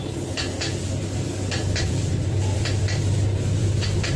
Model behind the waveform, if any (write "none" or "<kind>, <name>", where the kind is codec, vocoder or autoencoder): vocoder, BigVGAN v2